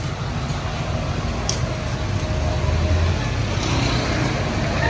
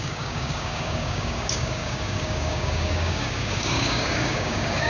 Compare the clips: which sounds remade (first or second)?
second